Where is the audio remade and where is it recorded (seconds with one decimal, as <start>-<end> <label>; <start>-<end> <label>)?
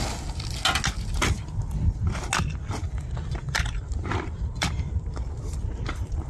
0.0-6.3 recorded